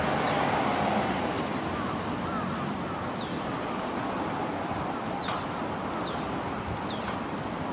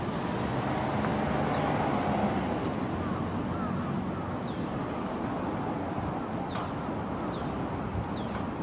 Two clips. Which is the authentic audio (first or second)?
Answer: second